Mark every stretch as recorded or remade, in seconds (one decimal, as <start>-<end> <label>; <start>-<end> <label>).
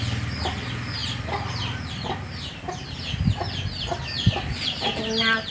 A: 0.0-5.5 remade